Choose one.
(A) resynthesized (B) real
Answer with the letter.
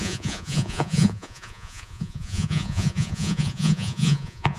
A